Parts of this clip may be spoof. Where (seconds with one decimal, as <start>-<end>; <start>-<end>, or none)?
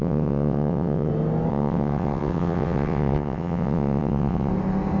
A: 0.0-1.1; 1.5-4.5